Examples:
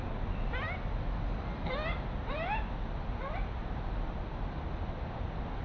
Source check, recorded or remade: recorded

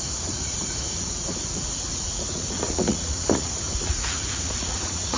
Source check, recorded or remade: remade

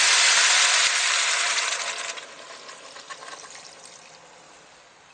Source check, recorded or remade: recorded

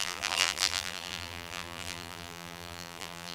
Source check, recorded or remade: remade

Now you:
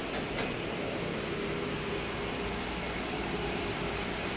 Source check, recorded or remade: recorded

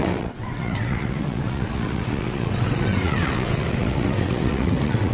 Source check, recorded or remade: remade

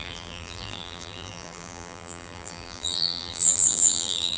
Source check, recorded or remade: remade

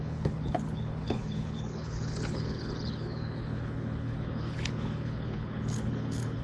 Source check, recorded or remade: remade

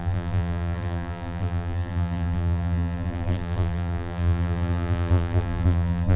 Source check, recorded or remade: remade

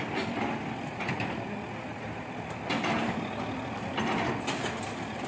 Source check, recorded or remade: recorded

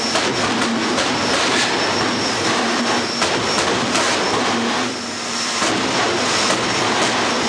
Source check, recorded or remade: recorded